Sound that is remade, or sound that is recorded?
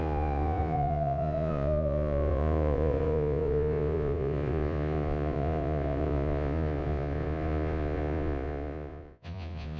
remade